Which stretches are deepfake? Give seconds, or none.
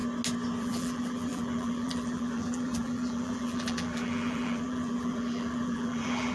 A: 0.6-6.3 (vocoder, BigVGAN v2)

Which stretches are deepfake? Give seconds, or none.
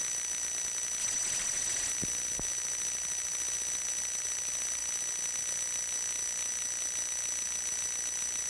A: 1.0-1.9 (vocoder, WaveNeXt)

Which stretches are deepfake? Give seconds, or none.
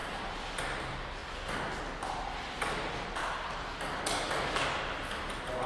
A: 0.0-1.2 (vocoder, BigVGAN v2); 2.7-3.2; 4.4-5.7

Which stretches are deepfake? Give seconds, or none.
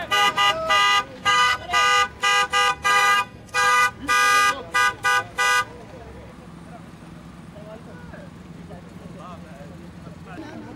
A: 1.2-1.7 (codec, SNAC); 2.7-3.9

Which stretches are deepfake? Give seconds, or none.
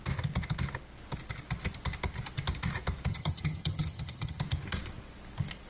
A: 3.1-4.4 (vocoder, HiFi-GAN)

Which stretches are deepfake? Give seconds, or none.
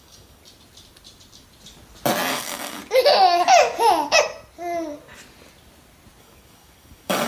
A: 0.0-0.4 (codec, DAC); 2.3-2.8; 6.2-7.3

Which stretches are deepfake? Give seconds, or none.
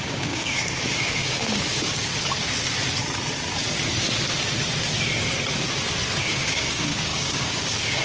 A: 0.0-2.1 (codec, DAC); 6.2-8.0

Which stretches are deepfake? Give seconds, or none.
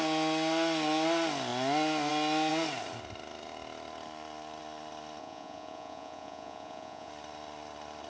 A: 5.2-7.1 (vocoder, Vocos)